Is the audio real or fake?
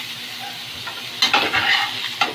real